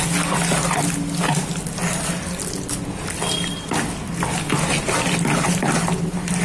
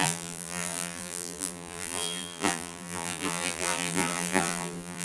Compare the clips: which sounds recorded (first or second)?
first